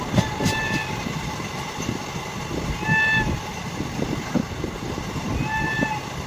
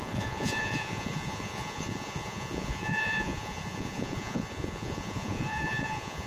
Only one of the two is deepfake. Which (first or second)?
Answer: second